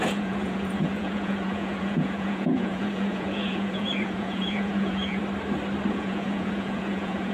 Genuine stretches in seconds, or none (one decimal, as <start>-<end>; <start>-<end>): 5.2-5.9